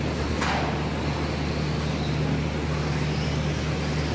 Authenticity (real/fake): real